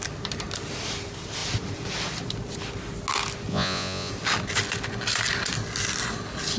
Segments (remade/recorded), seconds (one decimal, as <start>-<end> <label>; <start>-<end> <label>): 0.0-3.5 recorded; 3.5-4.1 remade; 4.1-6.6 recorded